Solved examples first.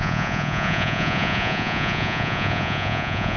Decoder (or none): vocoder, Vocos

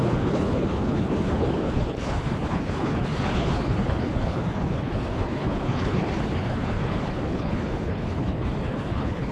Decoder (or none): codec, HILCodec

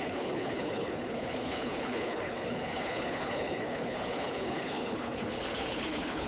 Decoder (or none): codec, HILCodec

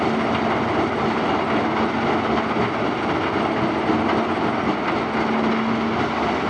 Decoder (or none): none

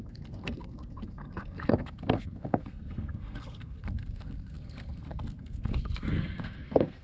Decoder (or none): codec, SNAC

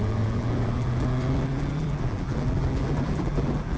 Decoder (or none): vocoder, BigVGAN v2